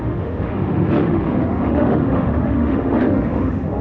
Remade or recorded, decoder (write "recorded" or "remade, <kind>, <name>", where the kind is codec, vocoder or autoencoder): remade, autoencoder, DAC-VAE